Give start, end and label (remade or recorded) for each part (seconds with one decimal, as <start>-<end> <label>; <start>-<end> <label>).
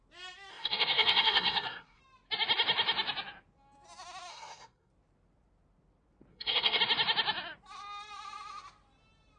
0.0-0.5 recorded; 0.5-2.0 remade; 2.0-4.3 recorded; 4.3-4.9 remade; 4.9-6.3 recorded; 6.3-6.8 remade; 6.8-9.4 recorded